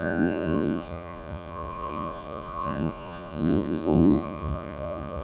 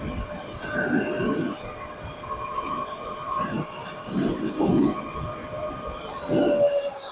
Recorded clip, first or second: second